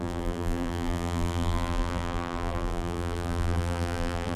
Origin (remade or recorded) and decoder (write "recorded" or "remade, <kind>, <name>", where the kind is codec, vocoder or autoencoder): remade, vocoder, BigVGAN v2